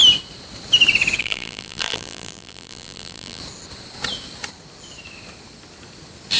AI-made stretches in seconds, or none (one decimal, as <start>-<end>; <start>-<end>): 1.2-3.4